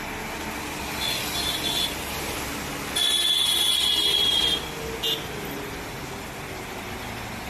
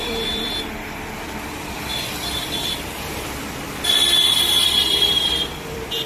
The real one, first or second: first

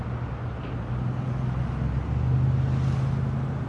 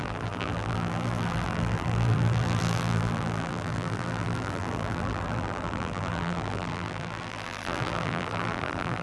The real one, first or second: first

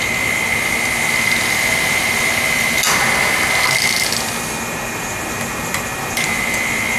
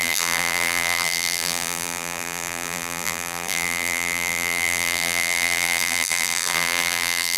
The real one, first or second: first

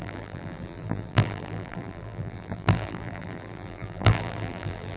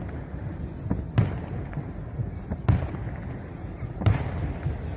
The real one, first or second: second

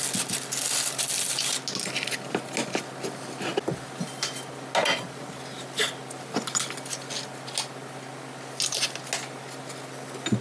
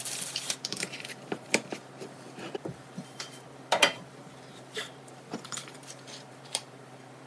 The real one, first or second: first